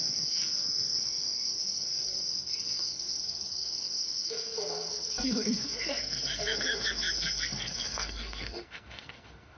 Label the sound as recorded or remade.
remade